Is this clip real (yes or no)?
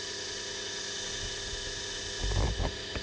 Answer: yes